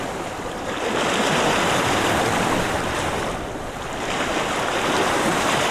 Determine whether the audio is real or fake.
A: real